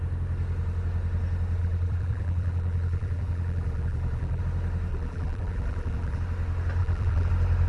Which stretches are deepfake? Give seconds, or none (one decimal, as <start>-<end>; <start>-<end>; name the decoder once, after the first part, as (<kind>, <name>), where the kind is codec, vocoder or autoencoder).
1.6-4.4 (vocoder, BigVGAN v2); 4.9-6.2; 6.8-7.3